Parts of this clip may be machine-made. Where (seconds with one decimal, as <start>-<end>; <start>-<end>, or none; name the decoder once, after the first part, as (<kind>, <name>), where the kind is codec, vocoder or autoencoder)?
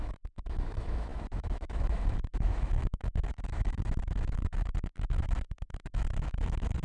0.0-6.8 (autoencoder, DAC-VAE)